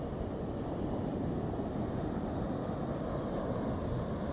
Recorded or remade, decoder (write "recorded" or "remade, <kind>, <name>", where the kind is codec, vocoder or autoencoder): recorded